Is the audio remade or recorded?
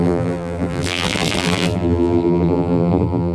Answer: remade